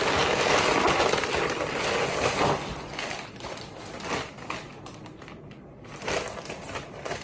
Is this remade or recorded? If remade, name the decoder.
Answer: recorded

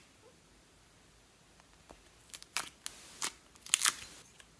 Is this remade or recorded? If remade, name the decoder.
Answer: recorded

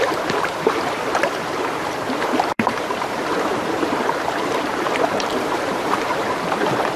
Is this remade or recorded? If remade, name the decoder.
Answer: remade, vocoder, BigVGAN v2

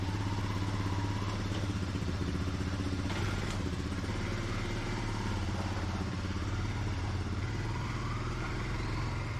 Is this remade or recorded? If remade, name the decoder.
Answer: remade, vocoder, BigVGAN v2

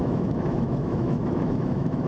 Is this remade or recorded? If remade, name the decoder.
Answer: remade, autoencoder, DAC-VAE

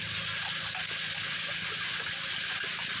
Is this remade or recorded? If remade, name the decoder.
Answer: recorded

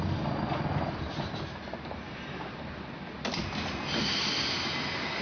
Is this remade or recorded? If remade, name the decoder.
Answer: recorded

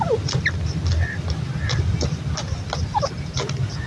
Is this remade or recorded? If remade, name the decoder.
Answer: recorded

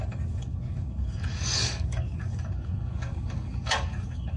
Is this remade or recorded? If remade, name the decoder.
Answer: remade, codec, DAC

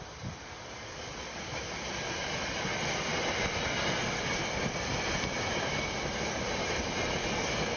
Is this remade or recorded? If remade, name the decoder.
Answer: recorded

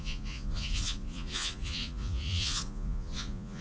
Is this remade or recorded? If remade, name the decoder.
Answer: remade, vocoder, Vocos